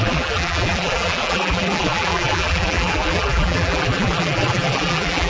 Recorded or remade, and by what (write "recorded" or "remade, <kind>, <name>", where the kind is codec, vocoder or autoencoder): remade, vocoder, BigVGAN v2